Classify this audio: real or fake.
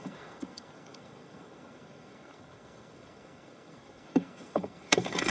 fake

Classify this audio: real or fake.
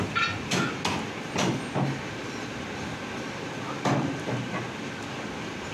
real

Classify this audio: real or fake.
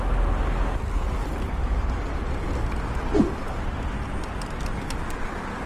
real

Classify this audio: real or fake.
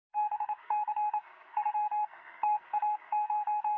fake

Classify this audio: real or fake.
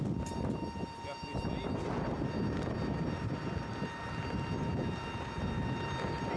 real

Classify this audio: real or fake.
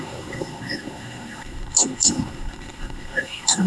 fake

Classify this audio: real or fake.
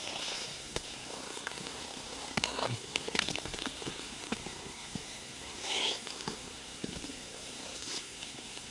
fake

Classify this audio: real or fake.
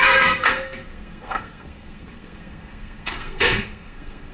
fake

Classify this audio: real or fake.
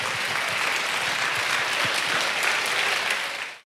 real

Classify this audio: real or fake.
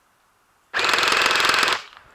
real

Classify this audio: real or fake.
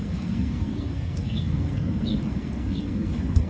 fake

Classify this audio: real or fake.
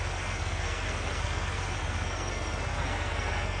fake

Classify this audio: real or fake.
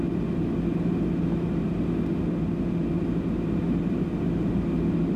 real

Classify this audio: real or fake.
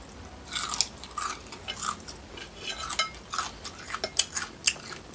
real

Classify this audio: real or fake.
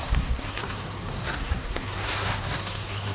fake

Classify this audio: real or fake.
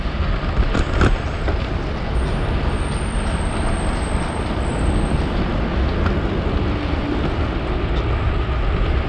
real